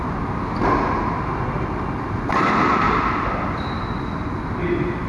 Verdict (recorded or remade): recorded